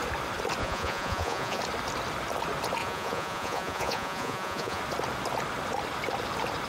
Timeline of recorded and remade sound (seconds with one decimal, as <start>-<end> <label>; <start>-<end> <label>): 0.0-0.6 recorded; 0.6-1.6 remade; 1.6-2.8 recorded; 2.8-4.8 remade; 4.8-6.7 recorded